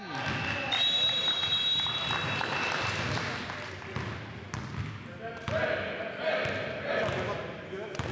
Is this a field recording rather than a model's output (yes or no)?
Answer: yes